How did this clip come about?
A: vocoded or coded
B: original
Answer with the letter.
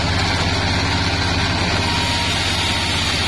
B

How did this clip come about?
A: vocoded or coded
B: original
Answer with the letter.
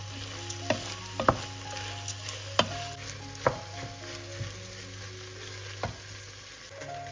B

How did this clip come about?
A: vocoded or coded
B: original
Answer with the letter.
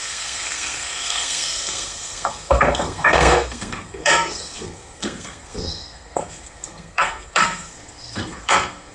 A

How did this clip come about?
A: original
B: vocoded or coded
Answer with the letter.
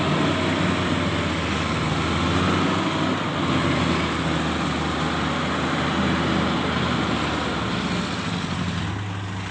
A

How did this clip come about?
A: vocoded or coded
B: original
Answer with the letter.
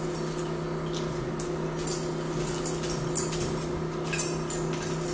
B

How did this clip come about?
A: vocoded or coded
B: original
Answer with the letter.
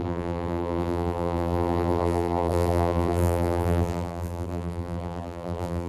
A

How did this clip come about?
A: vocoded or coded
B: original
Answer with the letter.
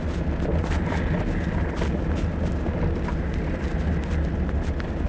B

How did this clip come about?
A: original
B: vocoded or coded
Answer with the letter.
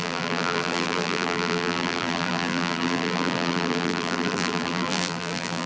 B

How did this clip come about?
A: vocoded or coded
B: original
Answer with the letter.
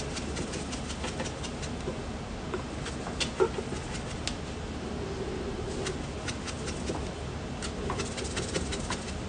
B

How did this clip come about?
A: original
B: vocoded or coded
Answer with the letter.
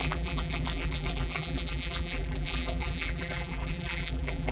B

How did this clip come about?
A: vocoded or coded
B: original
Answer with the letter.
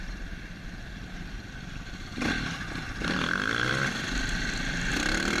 A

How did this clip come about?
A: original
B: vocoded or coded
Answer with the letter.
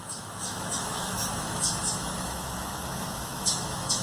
B